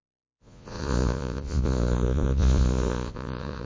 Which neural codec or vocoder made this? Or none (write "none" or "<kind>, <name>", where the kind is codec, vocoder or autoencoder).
vocoder, Vocos